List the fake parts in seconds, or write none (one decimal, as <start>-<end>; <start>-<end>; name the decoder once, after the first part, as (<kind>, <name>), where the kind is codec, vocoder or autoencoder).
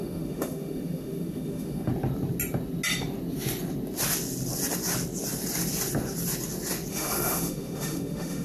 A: 0.0-1.9 (autoencoder, DAC-VAE); 6.9-8.4